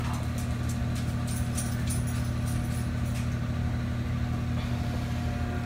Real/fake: real